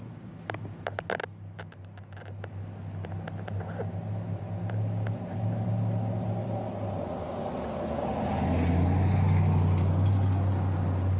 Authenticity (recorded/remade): recorded